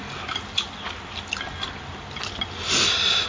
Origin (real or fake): real